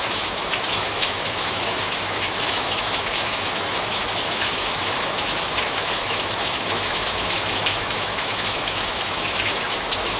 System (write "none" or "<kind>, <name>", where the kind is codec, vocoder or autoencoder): autoencoder, DAC-VAE